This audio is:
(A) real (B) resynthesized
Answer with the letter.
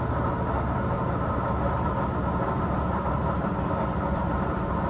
A